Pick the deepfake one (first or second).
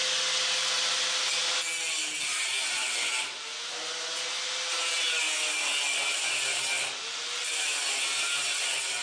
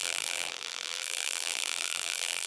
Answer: second